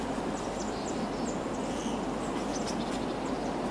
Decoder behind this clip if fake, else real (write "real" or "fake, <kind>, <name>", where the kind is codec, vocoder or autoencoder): real